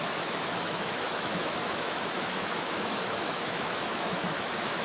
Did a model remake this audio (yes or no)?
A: yes